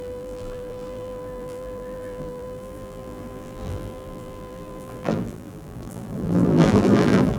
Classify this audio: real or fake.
fake